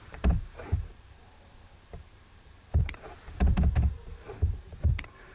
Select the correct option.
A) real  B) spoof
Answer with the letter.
B